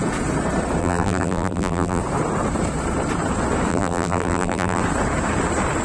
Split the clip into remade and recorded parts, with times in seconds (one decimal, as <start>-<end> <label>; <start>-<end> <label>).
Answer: 0.0-0.8 recorded; 0.8-2.0 remade; 2.0-3.7 recorded; 3.7-4.8 remade; 4.8-5.8 recorded